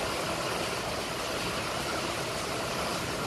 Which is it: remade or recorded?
recorded